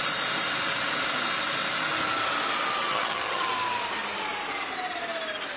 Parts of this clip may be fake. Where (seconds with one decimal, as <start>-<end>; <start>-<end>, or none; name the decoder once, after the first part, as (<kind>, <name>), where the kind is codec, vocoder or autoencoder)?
2.9-3.5 (vocoder, HiFi-GAN)